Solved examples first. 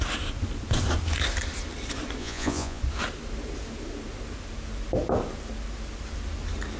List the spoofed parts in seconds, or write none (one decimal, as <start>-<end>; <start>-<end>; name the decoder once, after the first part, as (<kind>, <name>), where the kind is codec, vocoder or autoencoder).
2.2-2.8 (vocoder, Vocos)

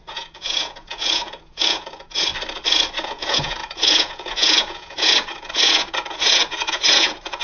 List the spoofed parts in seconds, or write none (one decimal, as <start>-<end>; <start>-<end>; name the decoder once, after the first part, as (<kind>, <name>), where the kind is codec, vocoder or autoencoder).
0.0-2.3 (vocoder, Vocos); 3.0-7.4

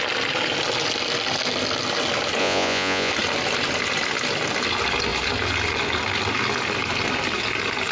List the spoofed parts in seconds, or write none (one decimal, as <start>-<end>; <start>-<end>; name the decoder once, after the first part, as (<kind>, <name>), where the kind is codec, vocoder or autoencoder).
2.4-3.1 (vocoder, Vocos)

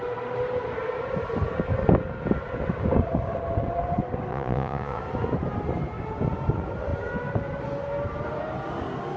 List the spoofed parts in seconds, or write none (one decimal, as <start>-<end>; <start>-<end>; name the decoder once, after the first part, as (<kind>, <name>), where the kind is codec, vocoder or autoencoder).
4.3-5.0 (vocoder, Vocos)

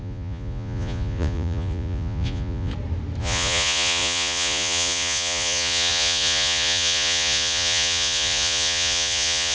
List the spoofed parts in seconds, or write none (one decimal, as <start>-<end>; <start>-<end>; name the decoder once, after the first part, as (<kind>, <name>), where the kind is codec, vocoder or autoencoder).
0.0-2.7 (vocoder, Vocos); 3.2-9.5

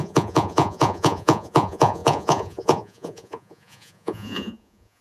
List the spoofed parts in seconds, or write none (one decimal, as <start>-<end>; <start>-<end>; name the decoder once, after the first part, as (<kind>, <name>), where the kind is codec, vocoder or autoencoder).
0.0-5.0 (vocoder, Vocos)